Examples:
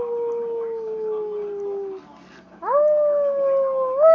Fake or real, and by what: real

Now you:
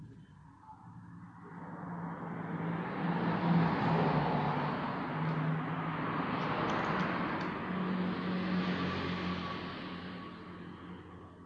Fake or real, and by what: real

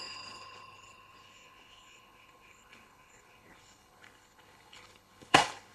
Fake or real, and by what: fake, codec, HILCodec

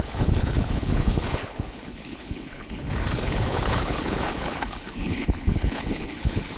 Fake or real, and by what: fake, codec, HILCodec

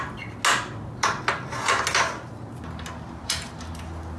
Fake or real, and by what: real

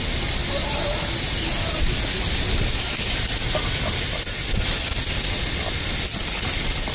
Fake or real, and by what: real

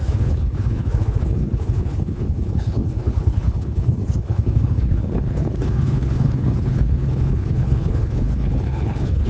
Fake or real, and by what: fake, codec, HILCodec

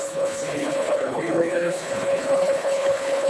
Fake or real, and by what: fake, codec, HILCodec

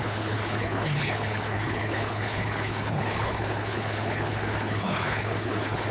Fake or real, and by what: fake, codec, HILCodec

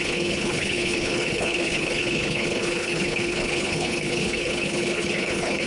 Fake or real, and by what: fake, codec, HILCodec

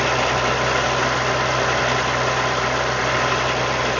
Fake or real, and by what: real